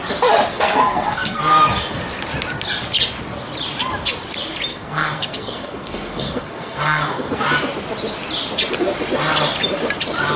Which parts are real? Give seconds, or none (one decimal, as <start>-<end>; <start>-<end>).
0.0-0.5; 1.4-4.7; 7.4-10.4